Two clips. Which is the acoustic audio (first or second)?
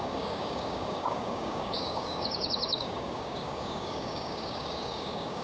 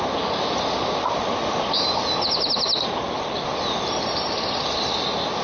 second